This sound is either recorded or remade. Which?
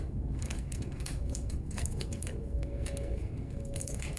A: remade